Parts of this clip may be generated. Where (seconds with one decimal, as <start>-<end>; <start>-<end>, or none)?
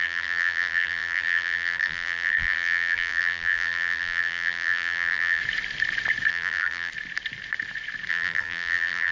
0.0-5.4; 6.3-6.9; 8.1-9.1